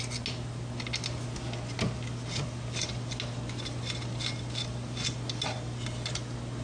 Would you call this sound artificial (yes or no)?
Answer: no